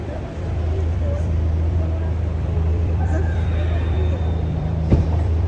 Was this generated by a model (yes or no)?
yes